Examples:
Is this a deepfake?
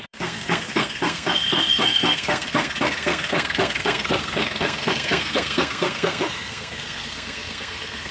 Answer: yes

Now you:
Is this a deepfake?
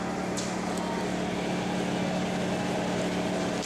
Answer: no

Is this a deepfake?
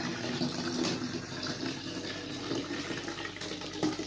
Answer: no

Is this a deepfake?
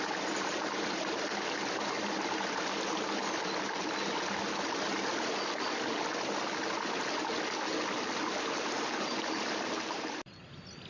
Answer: no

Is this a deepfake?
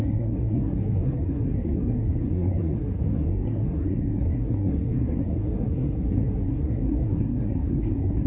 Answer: yes